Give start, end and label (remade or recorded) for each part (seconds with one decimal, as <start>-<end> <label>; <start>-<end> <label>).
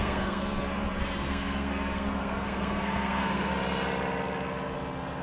0.0-0.4 remade; 0.4-1.0 recorded; 1.0-3.5 remade; 3.5-5.2 recorded